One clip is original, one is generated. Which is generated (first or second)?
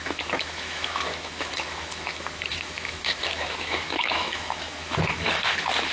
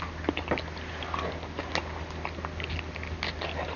first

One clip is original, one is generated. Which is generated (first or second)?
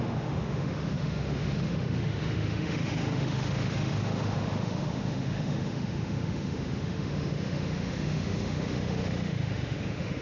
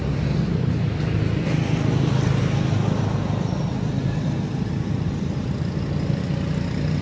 first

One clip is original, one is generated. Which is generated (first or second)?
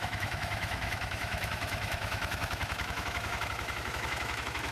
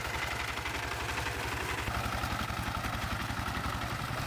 first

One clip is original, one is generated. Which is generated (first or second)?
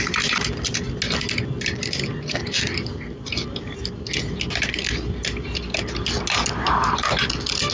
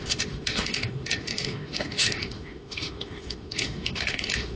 second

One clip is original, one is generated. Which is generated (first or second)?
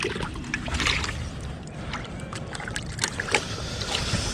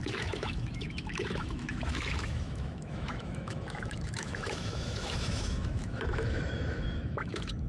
second